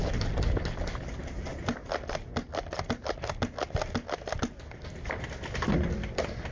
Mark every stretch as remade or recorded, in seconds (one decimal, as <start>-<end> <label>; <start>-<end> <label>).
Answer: 0.0-6.5 recorded